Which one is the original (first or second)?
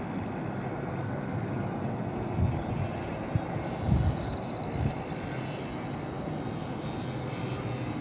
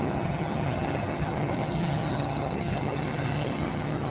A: first